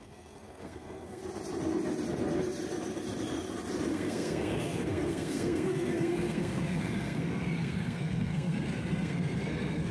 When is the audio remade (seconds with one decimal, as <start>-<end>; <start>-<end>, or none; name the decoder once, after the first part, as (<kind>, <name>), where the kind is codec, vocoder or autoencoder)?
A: 0.0-1.2 (codec, SNAC); 3.9-9.9